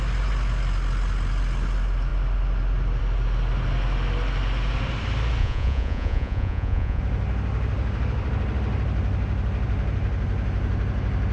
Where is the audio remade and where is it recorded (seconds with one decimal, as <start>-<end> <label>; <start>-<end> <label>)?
0.0-5.4 recorded; 5.4-7.0 remade; 7.0-11.3 recorded